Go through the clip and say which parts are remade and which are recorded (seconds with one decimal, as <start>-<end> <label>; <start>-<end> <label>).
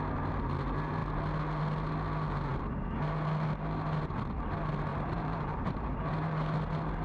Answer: 0.0-4.9 recorded; 4.9-6.1 remade; 6.1-7.0 recorded